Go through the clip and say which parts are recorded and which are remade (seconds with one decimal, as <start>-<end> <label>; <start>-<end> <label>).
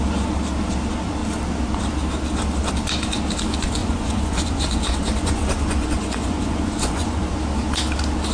0.0-3.8 recorded; 3.8-7.2 remade; 7.2-8.3 recorded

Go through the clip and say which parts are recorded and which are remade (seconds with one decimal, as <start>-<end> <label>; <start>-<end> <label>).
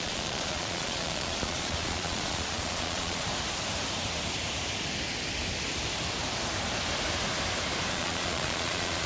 0.0-3.3 remade; 3.3-7.9 recorded; 7.9-9.1 remade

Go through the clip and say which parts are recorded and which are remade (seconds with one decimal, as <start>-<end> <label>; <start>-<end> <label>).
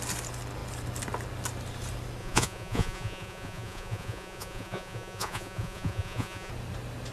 0.0-2.2 recorded; 2.2-6.5 remade; 6.5-7.1 recorded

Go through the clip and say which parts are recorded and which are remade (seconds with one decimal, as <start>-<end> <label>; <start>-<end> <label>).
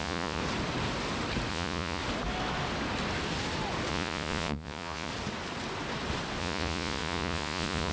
0.0-0.4 remade; 0.4-1.5 recorded; 1.5-2.0 remade; 2.0-3.9 recorded; 3.9-5.1 remade; 5.1-6.4 recorded; 6.4-7.9 remade